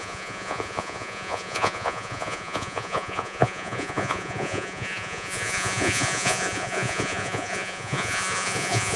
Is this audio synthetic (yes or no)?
yes